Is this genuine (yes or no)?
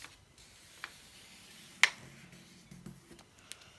yes